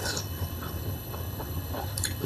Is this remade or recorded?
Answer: remade